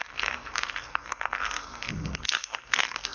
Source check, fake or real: fake